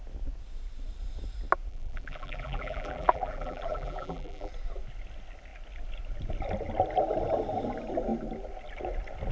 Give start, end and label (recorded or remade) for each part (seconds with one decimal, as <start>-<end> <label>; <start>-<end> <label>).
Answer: 0.0-1.7 recorded; 1.7-4.5 remade; 4.5-9.3 recorded